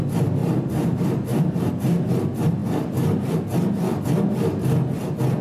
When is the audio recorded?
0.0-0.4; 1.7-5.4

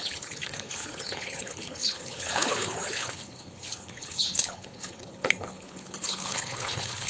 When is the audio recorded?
none

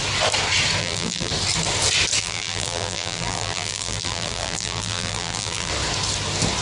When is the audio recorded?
0.0-0.8; 1.3-2.2; 5.7-6.6

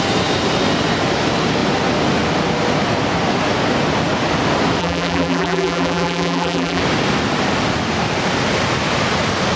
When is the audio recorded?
0.0-4.8; 6.8-9.6

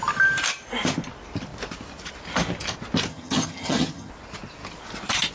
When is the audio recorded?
0.0-3.1; 4.1-5.3